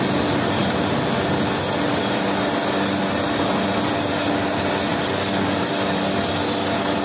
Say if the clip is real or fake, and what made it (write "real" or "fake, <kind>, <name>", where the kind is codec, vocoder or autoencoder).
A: real